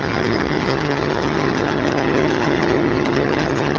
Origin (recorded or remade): remade